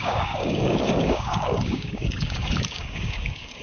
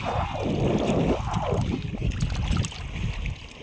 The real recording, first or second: second